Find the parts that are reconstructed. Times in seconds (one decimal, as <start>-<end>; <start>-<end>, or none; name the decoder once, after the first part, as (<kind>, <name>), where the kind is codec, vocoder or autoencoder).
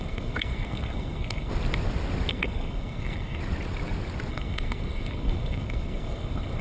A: 0.0-1.5 (codec, SNAC); 2.3-3.4; 4.3-6.6